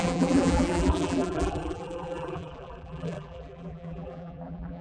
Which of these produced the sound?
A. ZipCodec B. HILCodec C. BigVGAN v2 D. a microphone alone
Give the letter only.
C